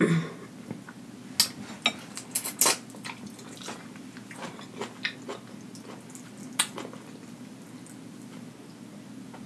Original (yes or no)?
yes